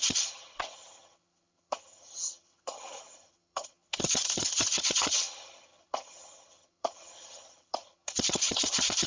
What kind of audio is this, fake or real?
fake